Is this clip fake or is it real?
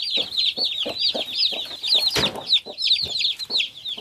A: real